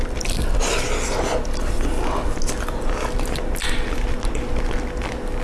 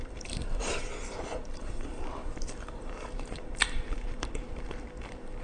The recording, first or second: first